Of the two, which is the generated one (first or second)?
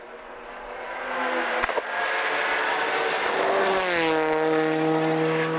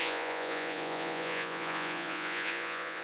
second